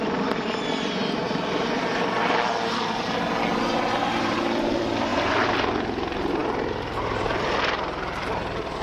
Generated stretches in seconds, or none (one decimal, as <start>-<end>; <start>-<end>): 0.0-1.0; 4.0-8.8